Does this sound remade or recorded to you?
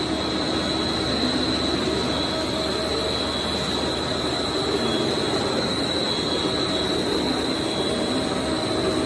recorded